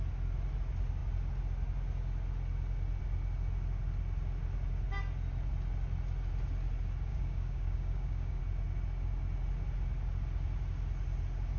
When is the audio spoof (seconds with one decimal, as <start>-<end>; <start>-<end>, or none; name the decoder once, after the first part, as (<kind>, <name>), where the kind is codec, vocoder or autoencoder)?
7.1-8.4 (codec, DAC)